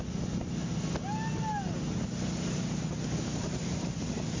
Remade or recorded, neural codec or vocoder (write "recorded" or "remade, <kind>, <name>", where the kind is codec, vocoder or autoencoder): recorded